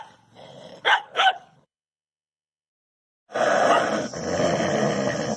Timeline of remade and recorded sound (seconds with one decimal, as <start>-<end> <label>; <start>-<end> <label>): 0.0-0.7 recorded; 0.7-2.7 remade; 2.7-5.4 recorded